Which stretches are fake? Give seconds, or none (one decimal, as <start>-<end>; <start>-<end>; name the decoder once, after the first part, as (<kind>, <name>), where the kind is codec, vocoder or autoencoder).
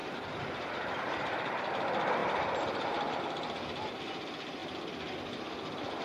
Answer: 0.0-1.7 (vocoder, BigVGAN v2); 2.2-3.2